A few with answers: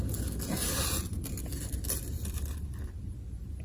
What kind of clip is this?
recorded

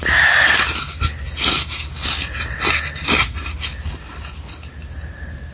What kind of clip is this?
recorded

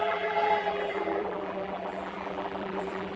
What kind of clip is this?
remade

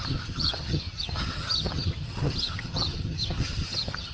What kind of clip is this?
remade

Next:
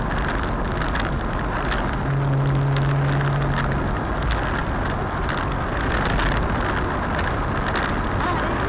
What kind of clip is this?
recorded